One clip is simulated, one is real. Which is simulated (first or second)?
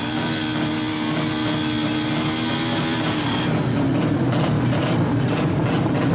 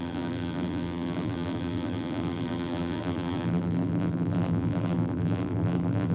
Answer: second